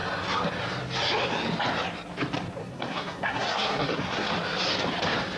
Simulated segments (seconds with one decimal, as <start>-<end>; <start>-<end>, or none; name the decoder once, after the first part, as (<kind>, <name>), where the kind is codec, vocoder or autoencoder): 2.6-4.3 (codec, SNAC)